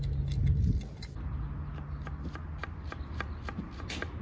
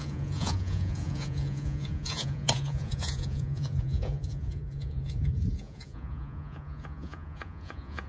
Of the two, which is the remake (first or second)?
second